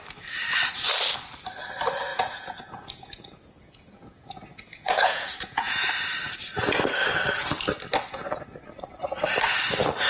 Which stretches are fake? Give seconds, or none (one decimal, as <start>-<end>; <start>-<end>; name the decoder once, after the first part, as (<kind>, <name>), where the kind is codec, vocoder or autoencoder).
2.1-5.9 (vocoder, Vocos)